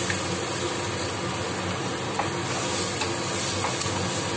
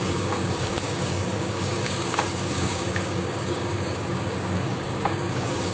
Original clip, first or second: first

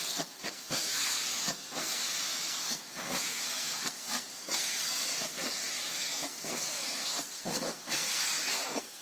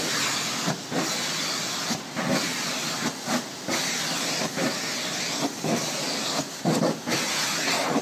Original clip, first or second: second